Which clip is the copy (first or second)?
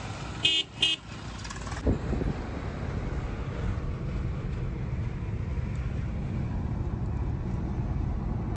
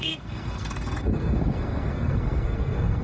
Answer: second